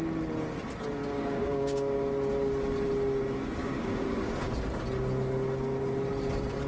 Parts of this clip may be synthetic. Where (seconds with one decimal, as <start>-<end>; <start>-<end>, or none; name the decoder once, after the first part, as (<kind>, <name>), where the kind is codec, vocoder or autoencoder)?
1.0-2.0 (codec, DAC); 3.6-4.3